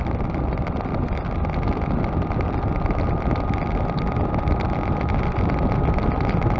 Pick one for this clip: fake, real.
real